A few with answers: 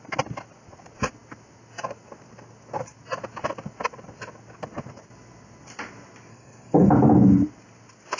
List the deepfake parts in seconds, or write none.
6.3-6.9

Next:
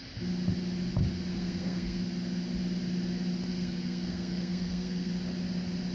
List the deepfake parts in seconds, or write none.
1.3-2.0; 3.5-5.1